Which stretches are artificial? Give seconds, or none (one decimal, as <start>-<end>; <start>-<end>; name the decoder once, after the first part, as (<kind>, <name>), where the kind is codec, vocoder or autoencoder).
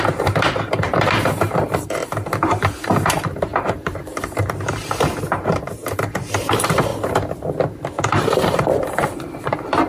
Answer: 0.0-6.9 (vocoder, BigVGAN v2); 8.1-9.9